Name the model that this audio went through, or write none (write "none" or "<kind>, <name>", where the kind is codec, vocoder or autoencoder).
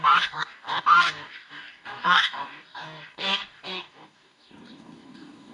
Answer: codec, DAC